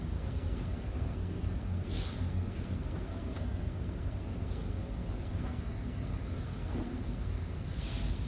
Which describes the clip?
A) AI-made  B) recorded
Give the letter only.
A